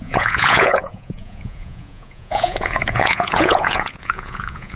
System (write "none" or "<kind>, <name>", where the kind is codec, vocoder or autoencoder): vocoder, Vocos